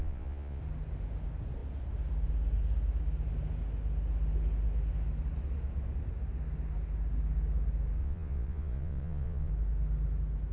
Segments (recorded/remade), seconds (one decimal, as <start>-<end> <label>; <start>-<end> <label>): 0.0-0.6 remade; 0.6-8.0 recorded; 8.0-9.5 remade; 9.5-10.5 recorded